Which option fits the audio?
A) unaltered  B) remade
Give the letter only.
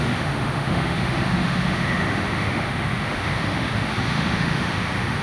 B